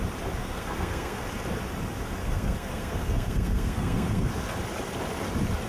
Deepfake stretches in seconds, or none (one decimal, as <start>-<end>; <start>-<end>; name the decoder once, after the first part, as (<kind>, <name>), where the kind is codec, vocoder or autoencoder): 0.4-1.2 (codec, SNAC); 2.2-4.3